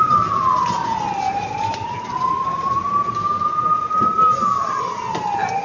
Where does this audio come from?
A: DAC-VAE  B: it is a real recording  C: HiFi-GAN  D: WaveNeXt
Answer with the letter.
B